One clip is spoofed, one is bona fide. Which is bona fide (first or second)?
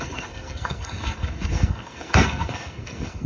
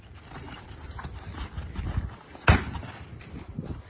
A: second